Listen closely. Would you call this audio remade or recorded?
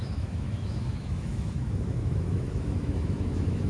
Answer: remade